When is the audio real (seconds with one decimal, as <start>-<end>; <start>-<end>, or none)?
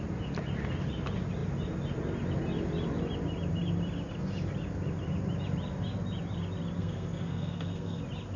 0.0-6.8; 8.0-8.4